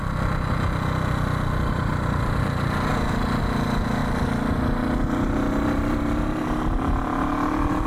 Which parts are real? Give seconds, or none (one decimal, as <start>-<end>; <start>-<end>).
0.0-1.7